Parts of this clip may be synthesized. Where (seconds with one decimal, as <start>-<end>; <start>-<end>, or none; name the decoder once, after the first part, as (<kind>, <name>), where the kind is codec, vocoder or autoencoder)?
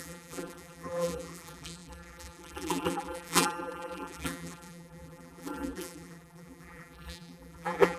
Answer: 0.0-8.0 (vocoder, BigVGAN v2)